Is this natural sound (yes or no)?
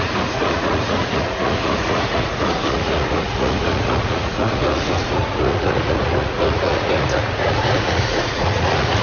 no